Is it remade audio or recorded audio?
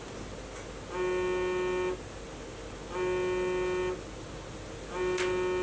recorded